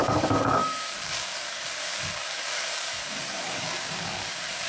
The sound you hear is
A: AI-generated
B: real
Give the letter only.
A